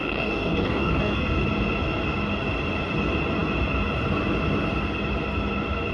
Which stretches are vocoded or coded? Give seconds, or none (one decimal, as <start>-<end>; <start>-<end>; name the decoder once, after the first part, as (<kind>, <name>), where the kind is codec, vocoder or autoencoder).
0.0-1.3 (codec, DAC)